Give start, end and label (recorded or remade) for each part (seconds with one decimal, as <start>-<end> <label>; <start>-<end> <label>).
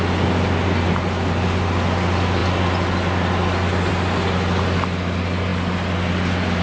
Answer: 0.0-6.6 recorded